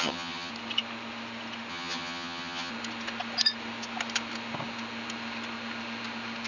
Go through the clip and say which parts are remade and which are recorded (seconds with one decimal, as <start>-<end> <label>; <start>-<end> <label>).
0.0-0.5 remade; 0.5-1.7 recorded; 1.7-2.7 remade; 2.7-6.5 recorded